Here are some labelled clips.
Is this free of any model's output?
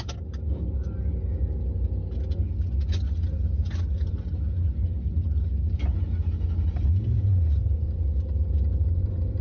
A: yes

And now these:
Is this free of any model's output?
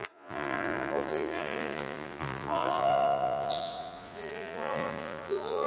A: no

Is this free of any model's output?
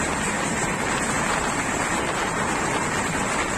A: yes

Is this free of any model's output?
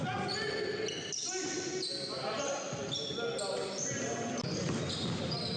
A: yes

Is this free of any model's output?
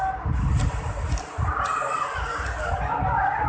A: yes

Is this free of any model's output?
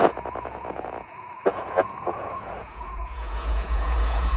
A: no